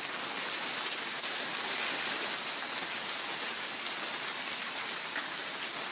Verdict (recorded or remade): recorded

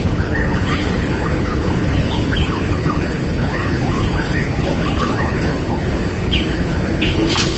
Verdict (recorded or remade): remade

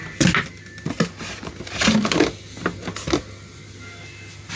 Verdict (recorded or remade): recorded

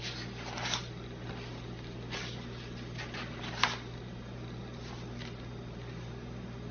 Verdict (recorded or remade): recorded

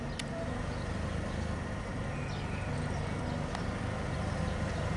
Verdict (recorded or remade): recorded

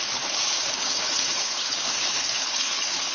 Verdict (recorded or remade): remade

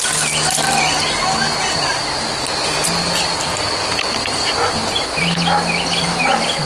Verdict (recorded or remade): recorded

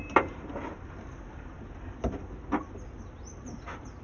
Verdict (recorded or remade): recorded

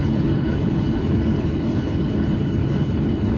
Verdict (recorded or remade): remade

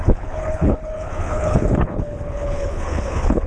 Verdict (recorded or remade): remade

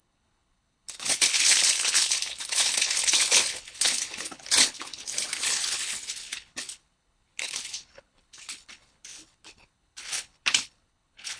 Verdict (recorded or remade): remade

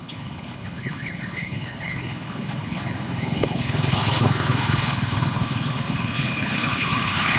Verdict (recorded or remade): remade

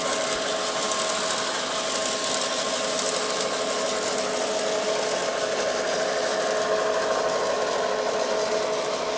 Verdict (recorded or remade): recorded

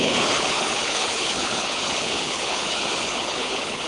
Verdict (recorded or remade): remade